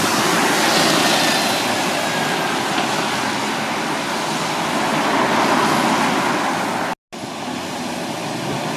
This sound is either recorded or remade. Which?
recorded